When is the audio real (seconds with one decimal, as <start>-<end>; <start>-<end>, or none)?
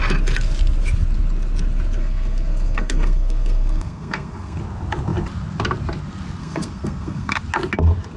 0.0-2.0; 4.6-6.4; 7.4-8.2